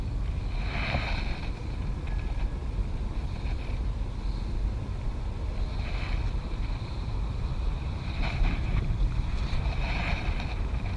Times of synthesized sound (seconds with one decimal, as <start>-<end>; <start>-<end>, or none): 6.4-10.0